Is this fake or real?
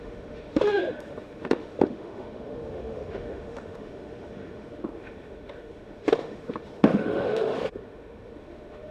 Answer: fake